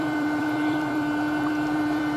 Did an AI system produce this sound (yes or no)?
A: yes